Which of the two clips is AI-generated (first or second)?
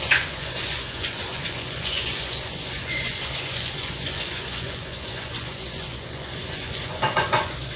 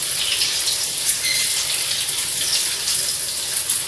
first